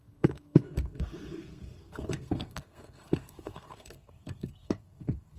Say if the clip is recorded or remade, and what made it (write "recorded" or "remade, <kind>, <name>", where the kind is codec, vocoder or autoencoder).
remade, codec, SNAC